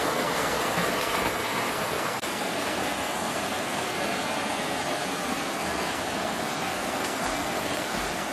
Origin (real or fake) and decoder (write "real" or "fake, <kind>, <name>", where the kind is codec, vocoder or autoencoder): fake, codec, SNAC